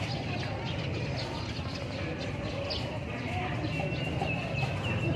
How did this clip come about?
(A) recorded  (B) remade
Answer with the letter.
A